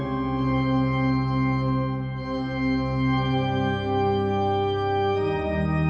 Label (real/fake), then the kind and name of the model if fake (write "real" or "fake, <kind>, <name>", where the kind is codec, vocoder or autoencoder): real